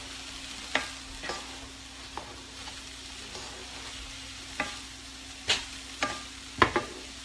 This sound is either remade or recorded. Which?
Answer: recorded